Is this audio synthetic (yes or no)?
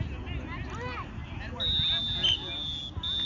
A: no